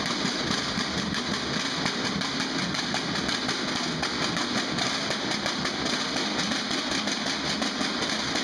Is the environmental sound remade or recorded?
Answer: recorded